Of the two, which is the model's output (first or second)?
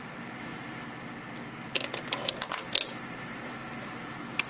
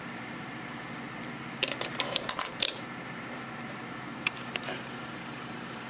second